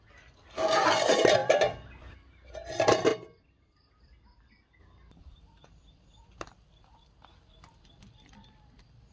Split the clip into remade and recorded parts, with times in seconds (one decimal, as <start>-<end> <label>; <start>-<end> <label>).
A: 0.0-9.1 recorded